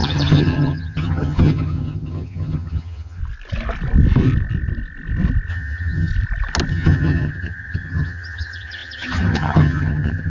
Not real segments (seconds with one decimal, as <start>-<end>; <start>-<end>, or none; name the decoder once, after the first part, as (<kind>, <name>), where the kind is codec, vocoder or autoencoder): 0.0-3.2 (vocoder, HiFi-GAN); 5.5-6.1; 6.7-10.3